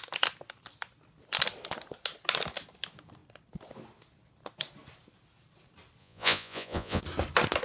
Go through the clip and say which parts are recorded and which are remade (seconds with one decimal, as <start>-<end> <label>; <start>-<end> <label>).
0.0-6.0 recorded; 6.0-7.0 remade; 7.0-7.6 recorded